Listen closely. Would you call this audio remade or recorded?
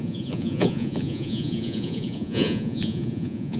remade